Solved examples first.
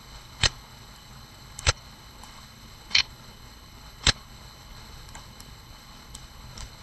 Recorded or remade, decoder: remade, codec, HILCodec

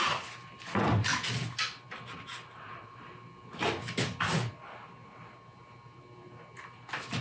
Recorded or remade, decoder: recorded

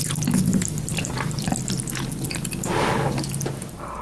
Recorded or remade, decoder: recorded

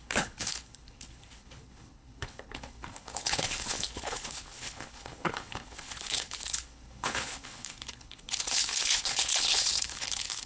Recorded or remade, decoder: remade, codec, HILCodec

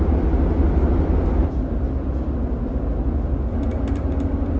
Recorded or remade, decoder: recorded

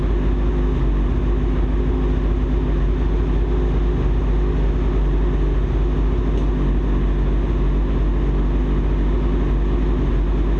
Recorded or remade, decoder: recorded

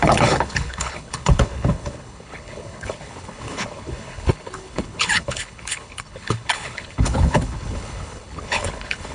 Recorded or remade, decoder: remade, codec, HILCodec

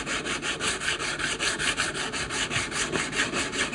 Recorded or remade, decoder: recorded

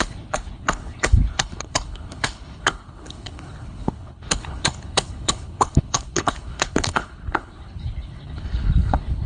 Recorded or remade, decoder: remade, codec, HILCodec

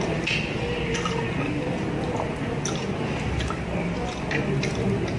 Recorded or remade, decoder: recorded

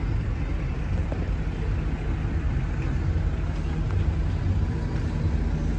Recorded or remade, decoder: recorded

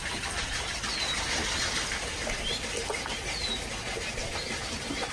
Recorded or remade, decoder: recorded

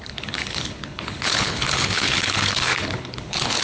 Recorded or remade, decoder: remade, codec, HILCodec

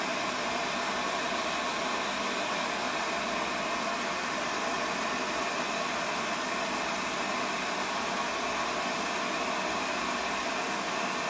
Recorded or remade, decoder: recorded